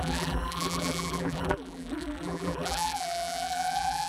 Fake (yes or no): yes